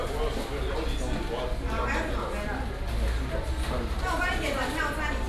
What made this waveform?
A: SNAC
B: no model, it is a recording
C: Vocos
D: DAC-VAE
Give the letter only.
B